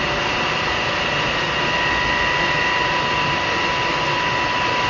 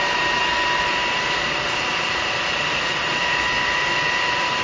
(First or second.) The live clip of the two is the first